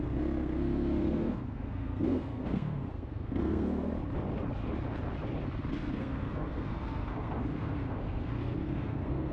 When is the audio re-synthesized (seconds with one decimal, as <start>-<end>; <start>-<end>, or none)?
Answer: 0.0-3.9; 5.7-9.3